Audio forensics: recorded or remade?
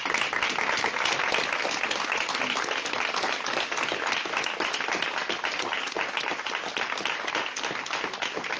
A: recorded